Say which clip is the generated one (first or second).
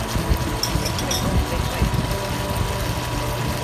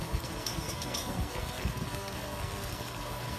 second